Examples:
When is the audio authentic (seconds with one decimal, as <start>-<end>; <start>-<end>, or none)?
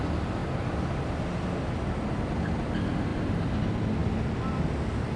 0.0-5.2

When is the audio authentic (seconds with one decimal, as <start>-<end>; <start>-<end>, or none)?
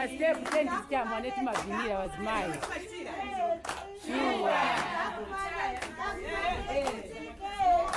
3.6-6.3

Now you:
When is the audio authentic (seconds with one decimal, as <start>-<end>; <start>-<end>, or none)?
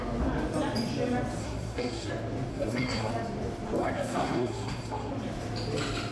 0.0-1.4; 2.1-2.5; 3.1-3.8; 5.1-6.1